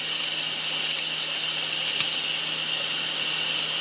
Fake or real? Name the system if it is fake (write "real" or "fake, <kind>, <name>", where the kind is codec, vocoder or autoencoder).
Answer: real